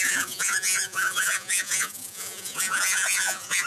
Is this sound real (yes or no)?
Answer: no